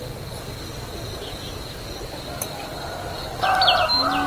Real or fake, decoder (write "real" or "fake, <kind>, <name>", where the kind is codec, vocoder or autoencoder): real